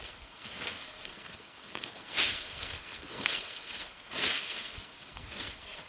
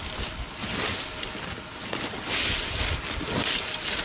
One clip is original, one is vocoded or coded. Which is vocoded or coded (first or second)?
first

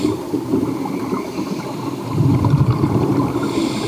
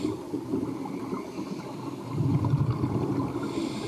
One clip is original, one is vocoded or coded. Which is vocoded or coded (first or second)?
first